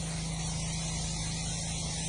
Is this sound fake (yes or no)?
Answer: no